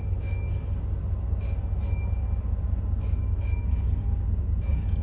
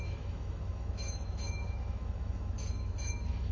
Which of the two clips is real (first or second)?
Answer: first